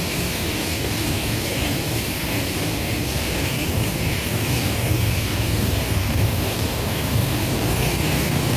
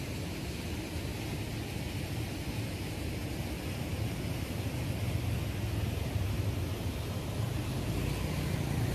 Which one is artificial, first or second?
first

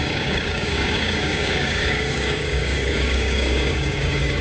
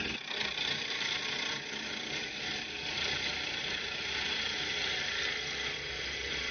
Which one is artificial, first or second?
first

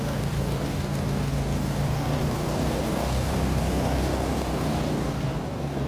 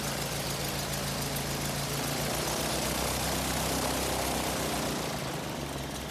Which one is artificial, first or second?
first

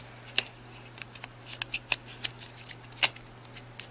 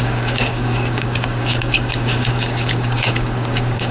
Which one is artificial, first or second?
second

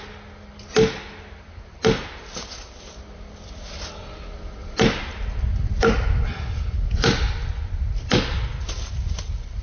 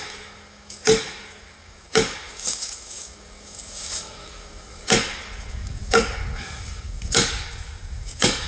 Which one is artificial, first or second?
second